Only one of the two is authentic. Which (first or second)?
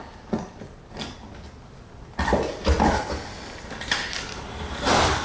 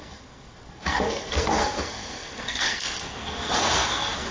first